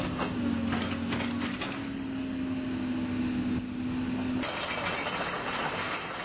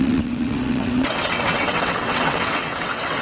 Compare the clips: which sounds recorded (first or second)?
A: first